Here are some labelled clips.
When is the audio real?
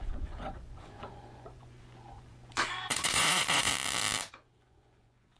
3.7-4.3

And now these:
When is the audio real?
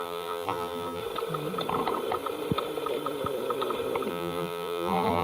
1.0-4.1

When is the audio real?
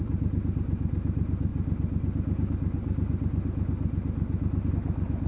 0.0-5.3